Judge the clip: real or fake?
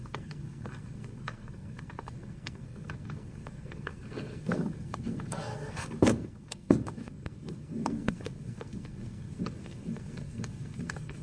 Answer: fake